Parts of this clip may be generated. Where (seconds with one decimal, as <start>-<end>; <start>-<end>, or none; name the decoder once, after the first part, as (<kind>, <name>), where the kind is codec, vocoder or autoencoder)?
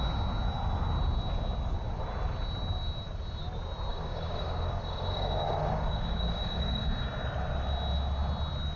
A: 3.9-6.8 (codec, DAC)